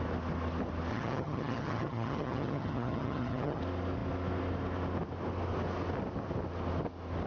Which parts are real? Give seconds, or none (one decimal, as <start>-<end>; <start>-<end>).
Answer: 0.0-0.9; 3.6-7.3